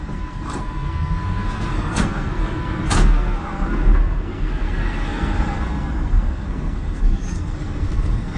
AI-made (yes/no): yes